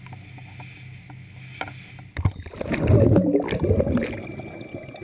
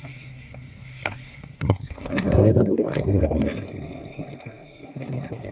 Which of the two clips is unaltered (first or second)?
first